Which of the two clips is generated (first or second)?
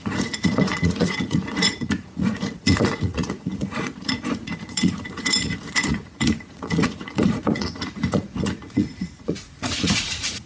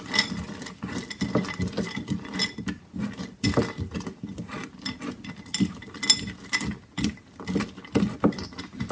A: first